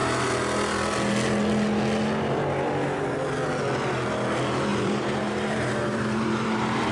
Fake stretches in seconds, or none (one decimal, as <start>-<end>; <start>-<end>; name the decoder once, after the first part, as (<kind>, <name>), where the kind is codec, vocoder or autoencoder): 4.7-6.9 (vocoder, BigVGAN v2)